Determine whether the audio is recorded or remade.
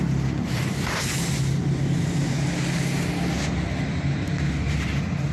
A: recorded